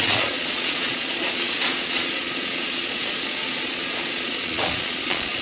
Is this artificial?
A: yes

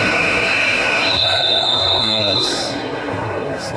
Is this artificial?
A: yes